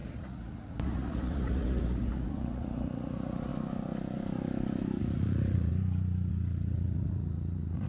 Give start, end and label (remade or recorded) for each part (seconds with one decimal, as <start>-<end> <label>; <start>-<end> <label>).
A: 0.0-3.5 remade; 3.5-5.0 recorded; 5.0-5.7 remade; 5.7-6.3 recorded; 6.3-7.9 remade